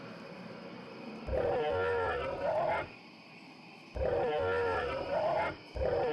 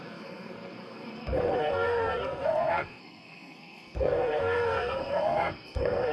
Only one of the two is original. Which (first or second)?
first